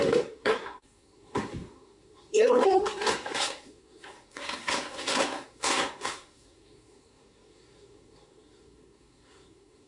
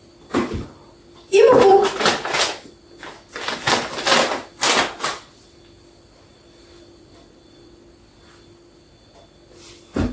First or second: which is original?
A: second